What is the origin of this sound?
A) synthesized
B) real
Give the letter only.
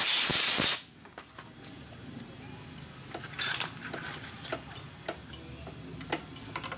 B